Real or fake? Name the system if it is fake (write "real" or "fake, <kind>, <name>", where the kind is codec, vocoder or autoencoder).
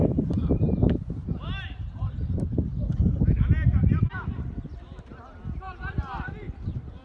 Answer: fake, vocoder, BigVGAN v2